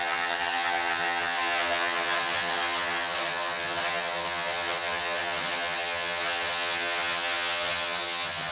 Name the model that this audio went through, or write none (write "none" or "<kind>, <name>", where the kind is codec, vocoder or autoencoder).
vocoder, HiFi-GAN